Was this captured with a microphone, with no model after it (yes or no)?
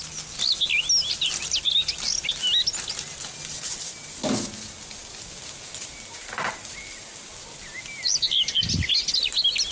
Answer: yes